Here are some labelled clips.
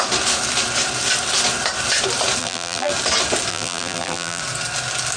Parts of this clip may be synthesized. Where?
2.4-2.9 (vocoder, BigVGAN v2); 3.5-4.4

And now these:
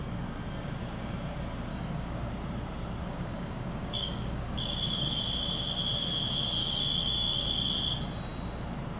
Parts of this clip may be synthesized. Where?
1.7-2.3 (codec, DAC); 3.0-5.2; 6.6-7.7

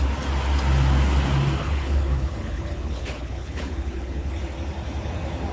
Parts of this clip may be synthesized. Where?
1.6-4.3 (codec, HILCodec)

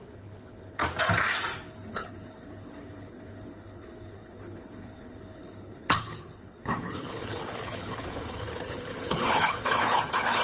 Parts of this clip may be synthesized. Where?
0.0-0.8 (codec, HILCodec); 1.9-10.4

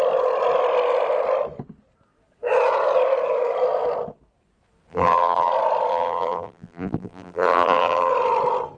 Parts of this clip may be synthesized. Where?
4.9-5.5 (vocoder, BigVGAN v2); 5.9-8.1

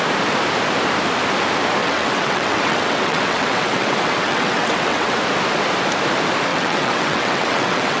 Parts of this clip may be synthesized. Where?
1.8-5.2 (vocoder, WaveNeXt); 6.5-8.0